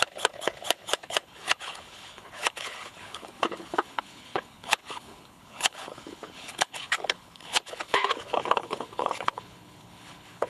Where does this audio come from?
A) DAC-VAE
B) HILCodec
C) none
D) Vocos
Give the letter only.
B